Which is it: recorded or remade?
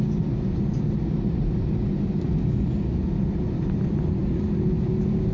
recorded